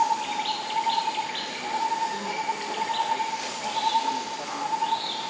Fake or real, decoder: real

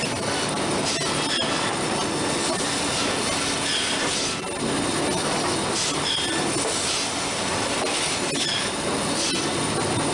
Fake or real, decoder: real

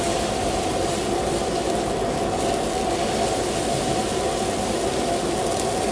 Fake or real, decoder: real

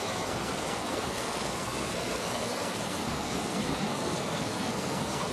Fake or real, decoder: fake, codec, SNAC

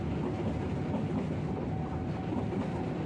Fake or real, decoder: real